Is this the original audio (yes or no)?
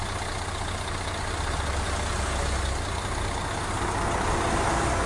yes